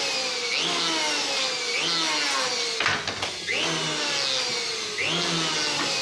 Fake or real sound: real